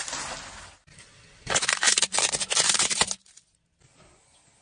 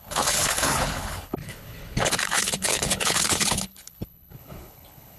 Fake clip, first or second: second